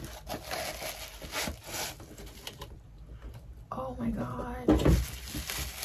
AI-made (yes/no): no